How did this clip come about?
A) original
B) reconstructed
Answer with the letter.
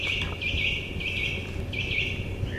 A